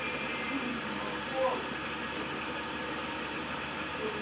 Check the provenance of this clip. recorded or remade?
remade